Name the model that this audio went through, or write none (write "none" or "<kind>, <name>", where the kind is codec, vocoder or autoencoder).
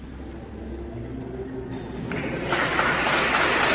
none